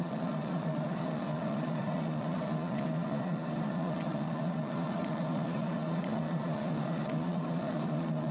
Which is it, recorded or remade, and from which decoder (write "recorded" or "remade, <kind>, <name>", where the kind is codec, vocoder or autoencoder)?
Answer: remade, vocoder, Vocos